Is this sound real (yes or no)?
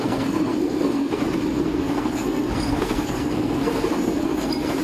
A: no